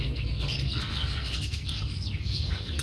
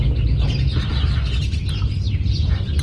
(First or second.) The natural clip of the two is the second